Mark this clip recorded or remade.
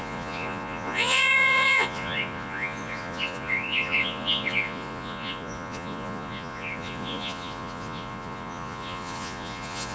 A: remade